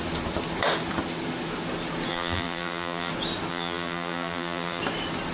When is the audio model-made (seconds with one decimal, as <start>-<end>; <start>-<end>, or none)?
2.1-3.1; 3.5-4.8